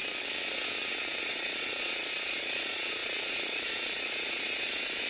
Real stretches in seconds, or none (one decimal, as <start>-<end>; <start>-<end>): 0.0-1.2